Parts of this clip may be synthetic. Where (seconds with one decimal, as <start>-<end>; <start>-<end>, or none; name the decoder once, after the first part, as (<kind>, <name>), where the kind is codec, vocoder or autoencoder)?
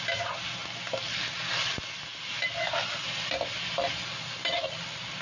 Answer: none